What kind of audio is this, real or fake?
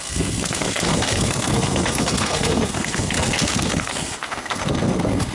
fake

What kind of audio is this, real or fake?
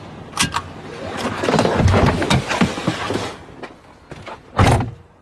real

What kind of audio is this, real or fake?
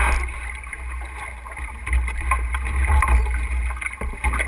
real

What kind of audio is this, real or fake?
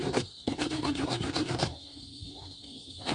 fake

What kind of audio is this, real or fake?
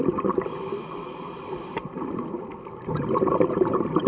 real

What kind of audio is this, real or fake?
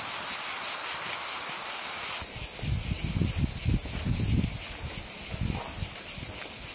real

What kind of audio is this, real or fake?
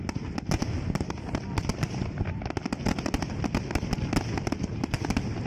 real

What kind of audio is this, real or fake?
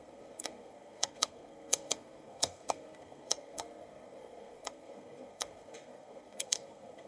fake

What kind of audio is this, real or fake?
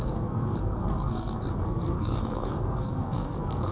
fake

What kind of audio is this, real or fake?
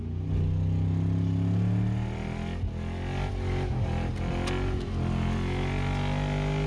real